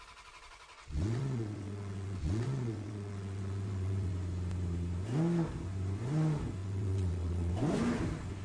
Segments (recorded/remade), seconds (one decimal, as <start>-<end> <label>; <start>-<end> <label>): 0.0-0.7 recorded; 0.7-4.1 remade; 4.1-6.6 recorded; 6.6-7.5 remade; 7.5-8.4 recorded